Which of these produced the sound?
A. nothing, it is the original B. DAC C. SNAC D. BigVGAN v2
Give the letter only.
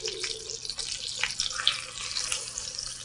A